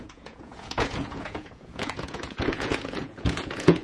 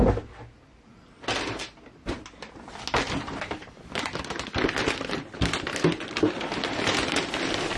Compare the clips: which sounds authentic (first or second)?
second